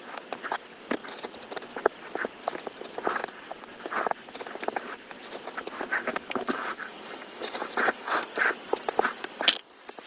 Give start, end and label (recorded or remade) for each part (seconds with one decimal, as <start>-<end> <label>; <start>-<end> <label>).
0.0-6.1 recorded; 6.1-8.1 remade; 8.1-10.1 recorded